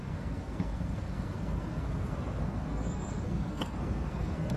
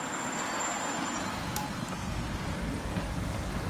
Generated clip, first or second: first